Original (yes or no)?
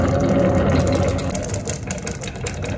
yes